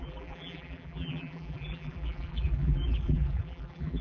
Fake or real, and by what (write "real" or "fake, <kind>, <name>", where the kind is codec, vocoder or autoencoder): fake, vocoder, BigVGAN v2